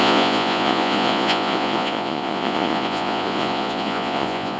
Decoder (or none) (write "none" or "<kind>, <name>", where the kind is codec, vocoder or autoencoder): vocoder, Vocos